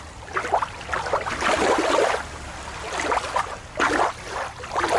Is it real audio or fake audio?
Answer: real